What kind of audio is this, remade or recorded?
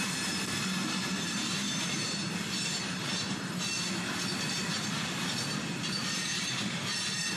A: remade